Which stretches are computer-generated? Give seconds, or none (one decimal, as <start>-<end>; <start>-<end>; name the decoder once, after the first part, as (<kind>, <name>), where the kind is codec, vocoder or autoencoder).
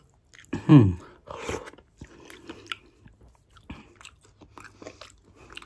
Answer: none